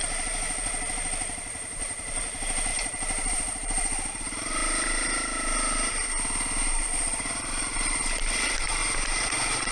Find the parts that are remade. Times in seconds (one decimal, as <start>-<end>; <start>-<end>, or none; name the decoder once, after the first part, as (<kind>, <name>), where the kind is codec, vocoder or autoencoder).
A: 0.0-4.6 (vocoder, BigVGAN v2); 6.8-8.8